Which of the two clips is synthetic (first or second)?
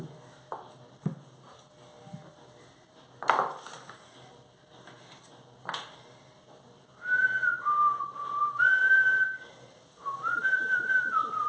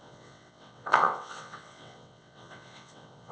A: second